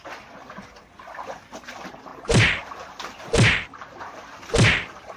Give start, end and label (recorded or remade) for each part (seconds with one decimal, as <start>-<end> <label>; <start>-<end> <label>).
0.0-5.2 recorded